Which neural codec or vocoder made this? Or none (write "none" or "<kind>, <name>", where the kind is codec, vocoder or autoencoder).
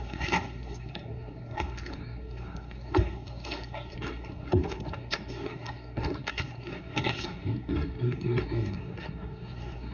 codec, SNAC